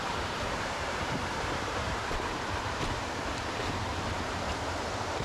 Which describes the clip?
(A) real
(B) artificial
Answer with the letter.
B